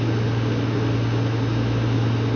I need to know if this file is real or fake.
real